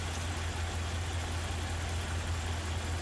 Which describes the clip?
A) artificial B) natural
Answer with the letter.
B